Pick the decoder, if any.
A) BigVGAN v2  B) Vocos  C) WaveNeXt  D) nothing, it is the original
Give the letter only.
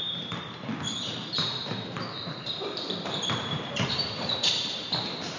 A